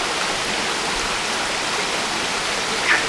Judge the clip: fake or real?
real